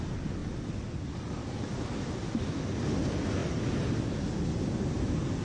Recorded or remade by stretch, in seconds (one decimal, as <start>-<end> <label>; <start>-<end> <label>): 0.0-5.4 recorded